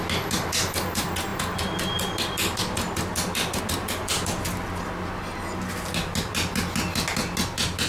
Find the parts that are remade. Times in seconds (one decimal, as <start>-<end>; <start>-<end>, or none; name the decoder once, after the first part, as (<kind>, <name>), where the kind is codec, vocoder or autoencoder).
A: none